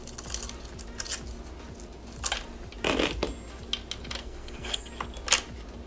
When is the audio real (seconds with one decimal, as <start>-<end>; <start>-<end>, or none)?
0.0-4.2; 4.9-5.9

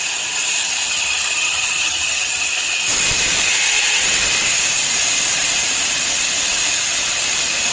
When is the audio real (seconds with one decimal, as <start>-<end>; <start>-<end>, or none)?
0.0-0.6; 2.8-7.7

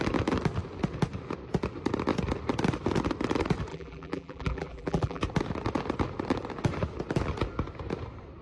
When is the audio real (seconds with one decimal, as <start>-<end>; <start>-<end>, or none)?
0.0-3.7; 5.2-8.4

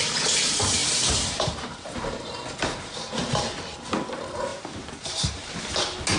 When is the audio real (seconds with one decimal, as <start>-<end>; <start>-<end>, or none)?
0.0-0.8; 2.0-4.5; 5.5-6.2

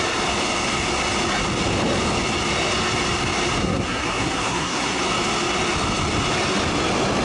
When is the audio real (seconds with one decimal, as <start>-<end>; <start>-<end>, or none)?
0.0-3.6; 5.0-7.2

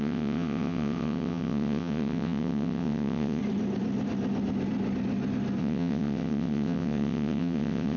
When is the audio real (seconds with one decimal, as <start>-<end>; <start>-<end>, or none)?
3.4-5.6

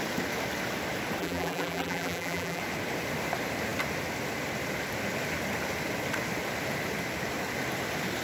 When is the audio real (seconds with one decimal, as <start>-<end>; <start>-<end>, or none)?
0.0-1.2; 2.6-8.2